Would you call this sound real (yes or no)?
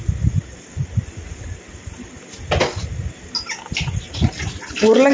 yes